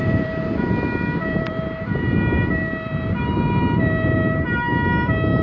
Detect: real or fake fake